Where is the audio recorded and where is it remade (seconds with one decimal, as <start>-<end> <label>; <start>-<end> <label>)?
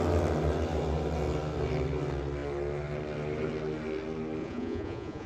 0.0-4.4 recorded; 4.4-5.3 remade